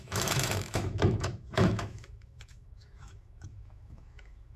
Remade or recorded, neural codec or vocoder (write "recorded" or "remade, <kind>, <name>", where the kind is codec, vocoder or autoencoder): remade, autoencoder, DAC-VAE